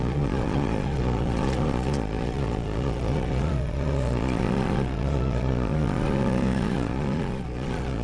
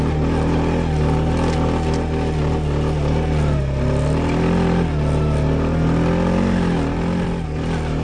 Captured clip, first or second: second